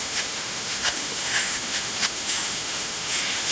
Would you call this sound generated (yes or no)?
yes